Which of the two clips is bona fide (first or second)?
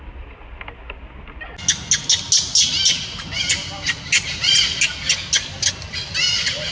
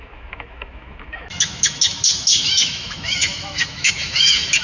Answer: first